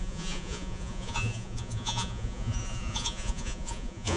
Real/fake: fake